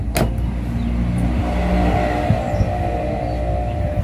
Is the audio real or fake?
real